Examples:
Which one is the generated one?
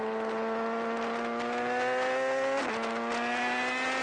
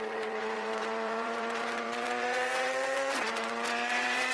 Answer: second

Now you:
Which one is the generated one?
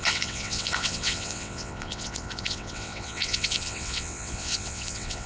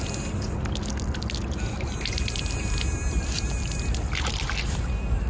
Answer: first